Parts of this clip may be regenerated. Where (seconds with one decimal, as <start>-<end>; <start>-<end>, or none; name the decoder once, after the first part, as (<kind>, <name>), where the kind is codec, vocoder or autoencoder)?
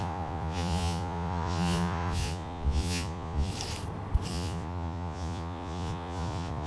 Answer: 0.0-3.5 (vocoder, Vocos); 4.3-6.7